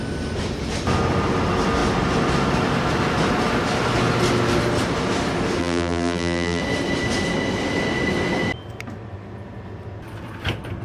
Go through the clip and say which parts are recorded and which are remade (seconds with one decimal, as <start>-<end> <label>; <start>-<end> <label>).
0.0-5.6 recorded; 5.6-6.6 remade; 6.6-10.8 recorded